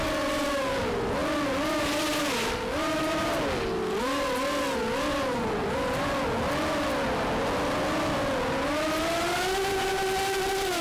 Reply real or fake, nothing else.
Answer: real